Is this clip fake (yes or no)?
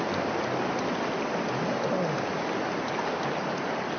no